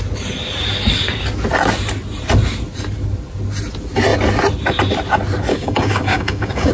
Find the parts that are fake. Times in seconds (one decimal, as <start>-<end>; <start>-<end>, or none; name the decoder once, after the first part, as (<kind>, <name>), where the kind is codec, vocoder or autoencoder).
5.5-6.7 (codec, DAC)